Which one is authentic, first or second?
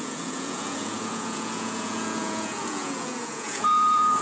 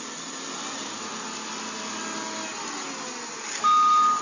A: second